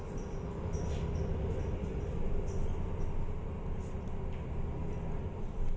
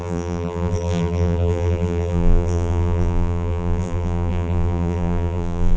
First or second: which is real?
first